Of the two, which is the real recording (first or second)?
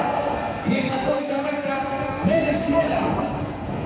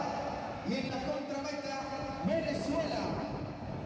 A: second